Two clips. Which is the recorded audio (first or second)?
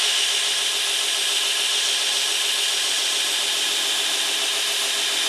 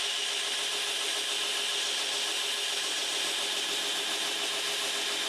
second